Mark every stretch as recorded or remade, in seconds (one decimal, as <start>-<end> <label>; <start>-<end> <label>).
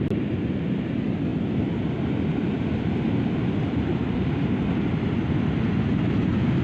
0.0-6.6 recorded